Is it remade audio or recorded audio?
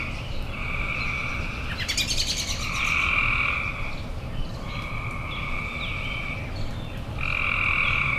recorded